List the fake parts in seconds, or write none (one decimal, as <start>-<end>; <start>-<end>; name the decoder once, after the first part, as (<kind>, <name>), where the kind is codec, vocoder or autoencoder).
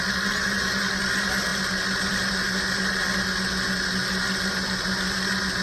none